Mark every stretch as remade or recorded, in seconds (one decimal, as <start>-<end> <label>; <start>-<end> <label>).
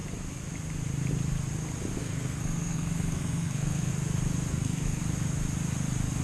0.0-2.0 recorded; 2.0-3.9 remade; 3.9-4.5 recorded; 4.5-5.0 remade; 5.0-6.2 recorded